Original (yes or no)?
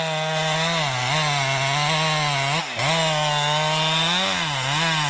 yes